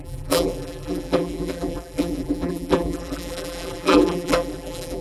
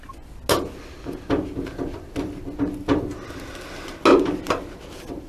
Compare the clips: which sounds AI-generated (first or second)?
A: first